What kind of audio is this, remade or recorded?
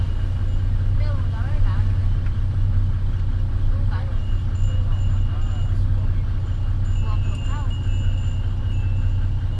recorded